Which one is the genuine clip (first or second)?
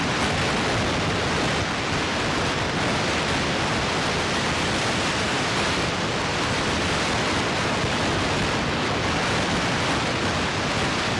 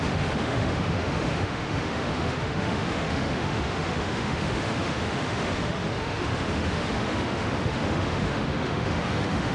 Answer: first